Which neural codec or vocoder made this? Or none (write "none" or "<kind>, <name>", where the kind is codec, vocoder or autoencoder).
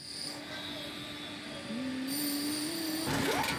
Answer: none